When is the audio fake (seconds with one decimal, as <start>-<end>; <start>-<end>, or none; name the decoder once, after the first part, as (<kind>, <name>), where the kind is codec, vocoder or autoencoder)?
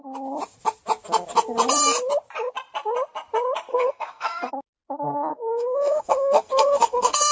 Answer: 3.7-4.5 (codec, SNAC); 5.3-7.3